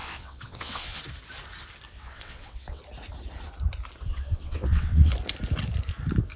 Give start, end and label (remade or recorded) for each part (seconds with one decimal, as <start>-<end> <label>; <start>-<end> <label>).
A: 0.0-1.0 remade; 1.0-1.9 recorded; 1.9-2.8 remade; 2.8-4.1 recorded; 4.1-5.1 remade; 5.1-6.4 recorded